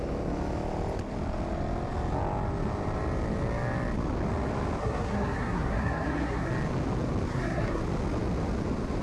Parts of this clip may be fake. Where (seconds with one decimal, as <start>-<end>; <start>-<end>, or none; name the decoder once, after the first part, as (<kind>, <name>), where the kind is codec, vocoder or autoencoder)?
4.8-6.5 (codec, SNAC); 7.3-7.8